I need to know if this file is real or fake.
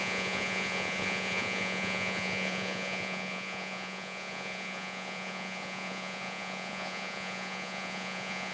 fake